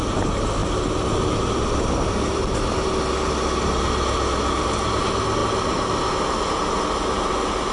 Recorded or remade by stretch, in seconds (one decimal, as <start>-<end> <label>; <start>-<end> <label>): 0.0-7.7 recorded